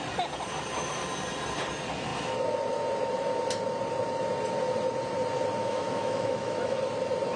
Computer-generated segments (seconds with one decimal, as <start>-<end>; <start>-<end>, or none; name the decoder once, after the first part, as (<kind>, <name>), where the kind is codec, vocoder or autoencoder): 5.6-6.8 (autoencoder, DAC-VAE)